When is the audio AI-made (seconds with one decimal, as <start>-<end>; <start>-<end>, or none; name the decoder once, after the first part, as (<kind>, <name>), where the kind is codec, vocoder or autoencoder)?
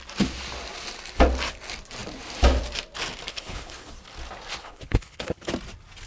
3.3-3.9 (codec, HILCodec); 4.6-5.5